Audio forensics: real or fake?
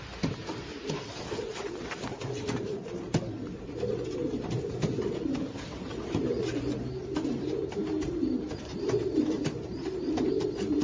fake